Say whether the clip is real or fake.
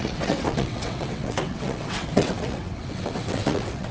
fake